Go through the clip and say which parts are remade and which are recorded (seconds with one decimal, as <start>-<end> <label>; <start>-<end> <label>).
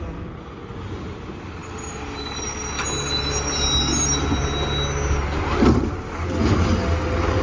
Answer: 0.0-7.4 recorded